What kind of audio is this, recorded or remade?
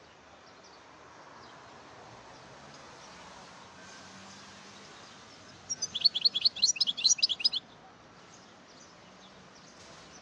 recorded